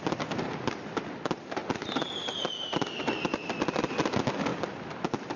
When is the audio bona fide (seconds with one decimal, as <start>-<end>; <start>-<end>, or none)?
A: 0.0-5.4